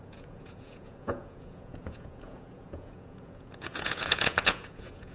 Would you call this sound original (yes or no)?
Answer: no